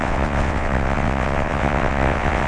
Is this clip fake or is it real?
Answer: fake